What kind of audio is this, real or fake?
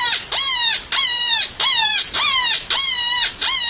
fake